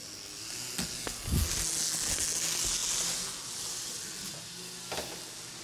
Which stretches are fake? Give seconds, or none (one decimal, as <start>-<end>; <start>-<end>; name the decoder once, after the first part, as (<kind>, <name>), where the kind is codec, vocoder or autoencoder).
none

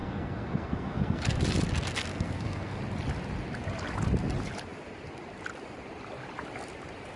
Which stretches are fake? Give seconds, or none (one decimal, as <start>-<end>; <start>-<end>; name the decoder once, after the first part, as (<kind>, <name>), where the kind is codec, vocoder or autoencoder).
0.0-1.4 (codec, SNAC); 2.1-2.8

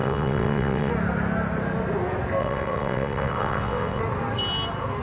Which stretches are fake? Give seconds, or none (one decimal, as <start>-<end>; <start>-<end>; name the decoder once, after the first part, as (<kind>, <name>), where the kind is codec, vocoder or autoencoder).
0.0-0.9 (vocoder, WaveNeXt); 2.4-4.0

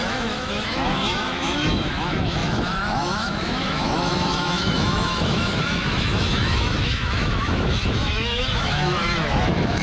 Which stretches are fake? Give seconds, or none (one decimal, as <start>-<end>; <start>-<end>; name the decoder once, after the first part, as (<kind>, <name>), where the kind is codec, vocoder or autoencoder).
0.0-9.8 (autoencoder, DAC-VAE)

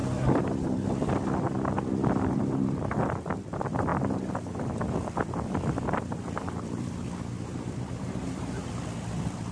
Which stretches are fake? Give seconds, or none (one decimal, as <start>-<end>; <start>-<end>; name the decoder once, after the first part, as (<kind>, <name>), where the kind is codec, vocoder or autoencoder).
0.0-3.9 (vocoder, BigVGAN v2); 4.7-9.5

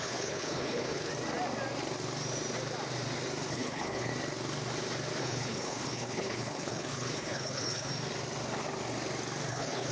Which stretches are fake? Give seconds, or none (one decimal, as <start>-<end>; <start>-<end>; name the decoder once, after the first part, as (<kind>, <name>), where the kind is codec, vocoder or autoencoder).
0.0-1.1 (codec, HILCodec); 3.5-4.1; 5.2-7.9; 9.5-9.9

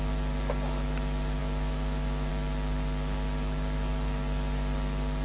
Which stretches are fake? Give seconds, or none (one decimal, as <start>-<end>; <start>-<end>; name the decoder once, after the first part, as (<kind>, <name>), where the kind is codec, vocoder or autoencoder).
1.4-2.3 (autoencoder, DAC-VAE)

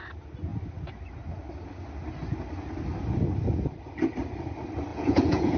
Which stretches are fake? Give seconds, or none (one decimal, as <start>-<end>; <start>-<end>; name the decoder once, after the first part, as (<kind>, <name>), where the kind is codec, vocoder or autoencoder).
4.9-5.6 (vocoder, Vocos)